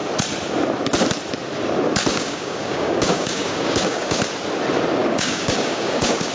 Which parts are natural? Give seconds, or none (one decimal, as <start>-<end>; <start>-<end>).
0.0-2.1; 4.2-5.0